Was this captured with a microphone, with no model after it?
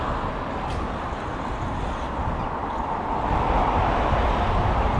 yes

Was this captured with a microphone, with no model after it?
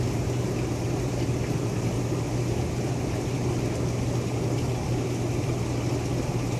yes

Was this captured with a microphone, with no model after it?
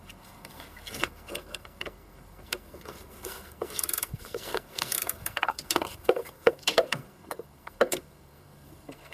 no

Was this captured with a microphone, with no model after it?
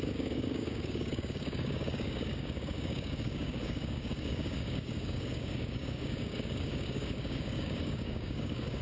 no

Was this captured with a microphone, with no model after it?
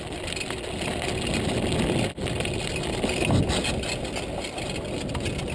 yes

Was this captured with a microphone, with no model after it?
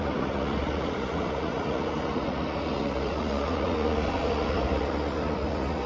no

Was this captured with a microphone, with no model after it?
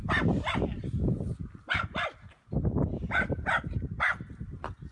yes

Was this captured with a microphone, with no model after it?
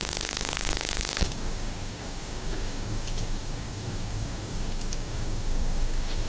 no